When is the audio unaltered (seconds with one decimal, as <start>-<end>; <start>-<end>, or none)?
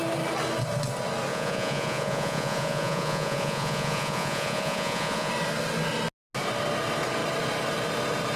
0.0-1.3; 5.3-8.4